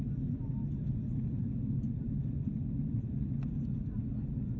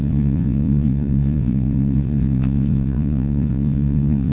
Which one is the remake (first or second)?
second